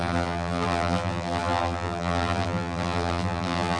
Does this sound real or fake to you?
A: fake